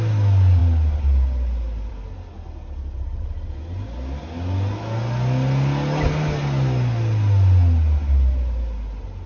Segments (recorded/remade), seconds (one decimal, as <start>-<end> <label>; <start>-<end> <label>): 0.0-9.3 recorded